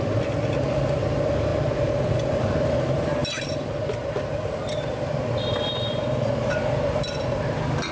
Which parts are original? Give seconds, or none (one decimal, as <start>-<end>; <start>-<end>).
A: none